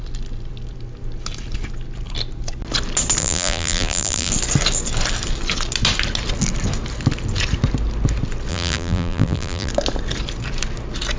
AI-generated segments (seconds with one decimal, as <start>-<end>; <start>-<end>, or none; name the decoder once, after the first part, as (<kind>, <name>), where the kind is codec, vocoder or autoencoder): 3.2-4.3 (vocoder, BigVGAN v2); 8.5-9.7